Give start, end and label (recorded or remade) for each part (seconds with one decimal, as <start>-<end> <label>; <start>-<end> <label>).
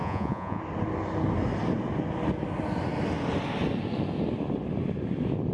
0.0-0.6 remade; 0.6-5.5 recorded